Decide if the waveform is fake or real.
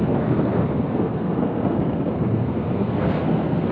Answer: fake